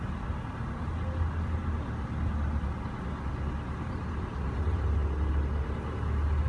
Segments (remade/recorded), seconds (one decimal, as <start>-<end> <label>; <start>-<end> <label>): 0.0-6.5 recorded